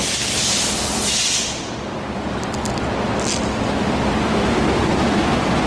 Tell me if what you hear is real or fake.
real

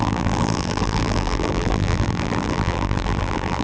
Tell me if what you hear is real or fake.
fake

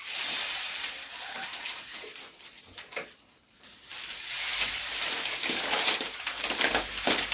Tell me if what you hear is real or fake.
fake